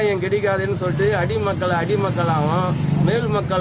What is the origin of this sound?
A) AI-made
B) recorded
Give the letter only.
B